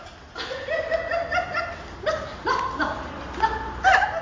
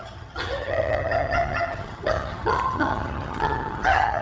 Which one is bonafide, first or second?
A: first